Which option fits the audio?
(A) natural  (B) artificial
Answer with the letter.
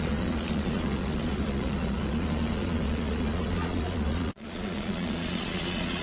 B